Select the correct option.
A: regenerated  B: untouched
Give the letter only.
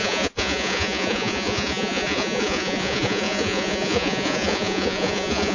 A